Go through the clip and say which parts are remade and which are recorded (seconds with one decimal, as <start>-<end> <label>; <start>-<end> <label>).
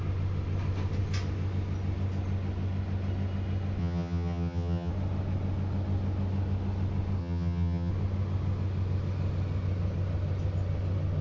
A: 0.0-3.8 recorded; 3.8-4.9 remade; 4.9-7.2 recorded; 7.2-7.9 remade; 7.9-11.2 recorded